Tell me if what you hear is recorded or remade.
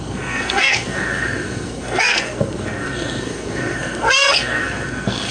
remade